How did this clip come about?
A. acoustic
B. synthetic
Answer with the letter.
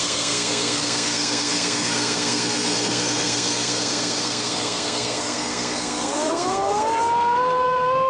B